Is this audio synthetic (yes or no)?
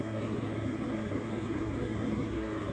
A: yes